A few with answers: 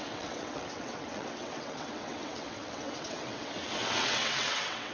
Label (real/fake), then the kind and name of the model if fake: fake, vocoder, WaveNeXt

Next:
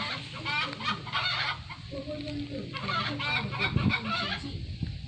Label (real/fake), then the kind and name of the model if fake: real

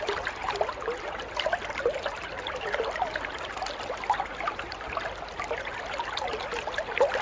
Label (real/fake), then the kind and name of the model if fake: real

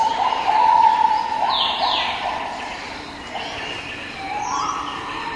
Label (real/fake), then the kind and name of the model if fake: real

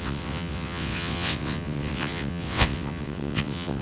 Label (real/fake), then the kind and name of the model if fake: fake, vocoder, WaveNeXt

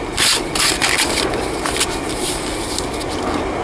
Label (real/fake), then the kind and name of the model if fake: real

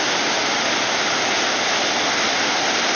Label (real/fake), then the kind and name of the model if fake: real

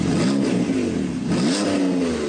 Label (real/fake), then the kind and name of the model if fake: real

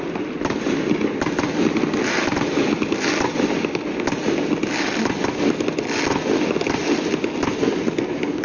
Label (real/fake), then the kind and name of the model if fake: real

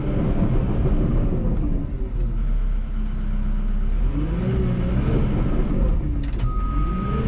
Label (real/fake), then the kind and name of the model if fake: real